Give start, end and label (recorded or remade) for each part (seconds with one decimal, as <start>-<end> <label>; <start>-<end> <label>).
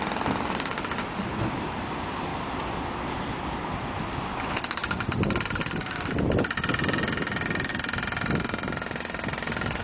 0.0-9.8 recorded